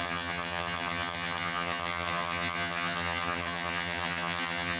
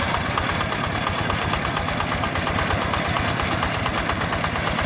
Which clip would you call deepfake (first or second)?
first